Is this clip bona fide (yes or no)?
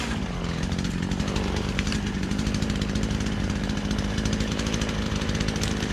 no